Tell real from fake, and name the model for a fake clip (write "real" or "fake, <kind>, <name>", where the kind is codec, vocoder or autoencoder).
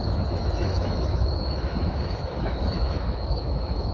fake, autoencoder, DAC-VAE